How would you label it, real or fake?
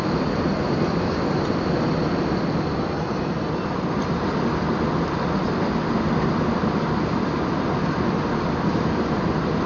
real